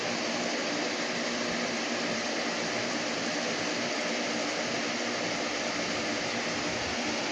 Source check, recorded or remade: recorded